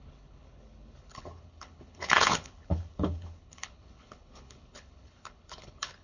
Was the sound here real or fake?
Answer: fake